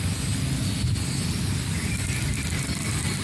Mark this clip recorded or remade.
recorded